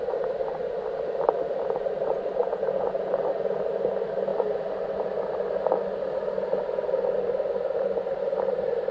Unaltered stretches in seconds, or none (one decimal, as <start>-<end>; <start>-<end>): 0.0-2.4; 3.1-8.9